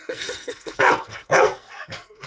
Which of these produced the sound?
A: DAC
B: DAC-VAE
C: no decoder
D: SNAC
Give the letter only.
D